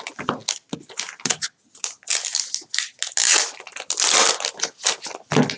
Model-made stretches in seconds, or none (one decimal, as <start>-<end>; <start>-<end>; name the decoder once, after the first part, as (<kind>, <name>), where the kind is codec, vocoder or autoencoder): none